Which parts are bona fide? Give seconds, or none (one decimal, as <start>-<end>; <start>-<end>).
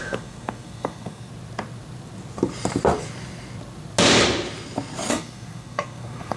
1.3-5.1